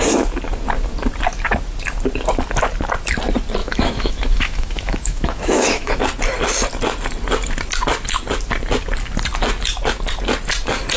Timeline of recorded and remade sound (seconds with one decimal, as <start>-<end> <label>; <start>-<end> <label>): 0.0-3.6 recorded; 3.6-5.9 remade; 5.9-11.0 recorded